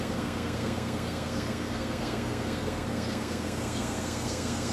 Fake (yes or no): yes